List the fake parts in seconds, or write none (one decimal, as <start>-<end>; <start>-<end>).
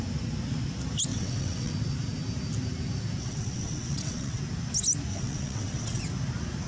1.1-1.7; 3.2-4.4; 5.1-6.0